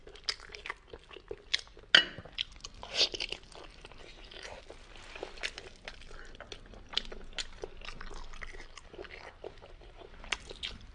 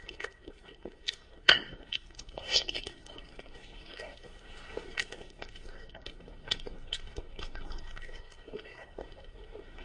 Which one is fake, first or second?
second